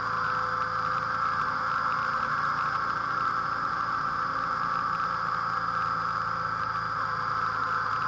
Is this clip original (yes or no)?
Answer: yes